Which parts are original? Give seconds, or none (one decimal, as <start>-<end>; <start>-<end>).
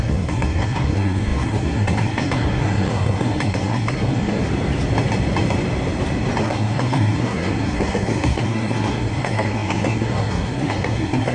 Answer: 4.5-6.4